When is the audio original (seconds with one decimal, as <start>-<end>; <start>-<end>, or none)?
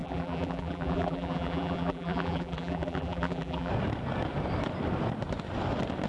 3.7-6.1